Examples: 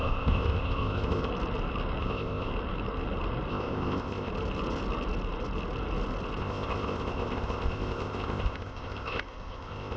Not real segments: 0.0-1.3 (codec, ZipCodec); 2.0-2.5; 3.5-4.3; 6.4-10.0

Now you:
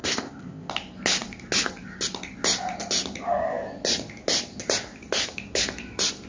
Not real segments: 0.0-0.7 (codec, ZipCodec)

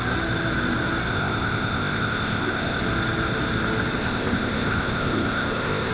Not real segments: 1.1-2.8 (codec, ZipCodec); 4.0-5.9

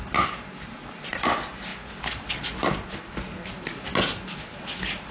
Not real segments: none

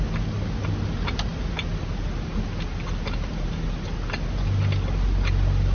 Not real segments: none

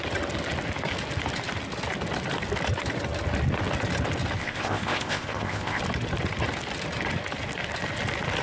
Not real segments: 4.4-5.8 (codec, ZipCodec)

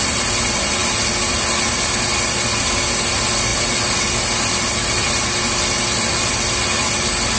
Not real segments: none